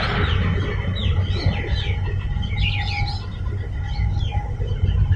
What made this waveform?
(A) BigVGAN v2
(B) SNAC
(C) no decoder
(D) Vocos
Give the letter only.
C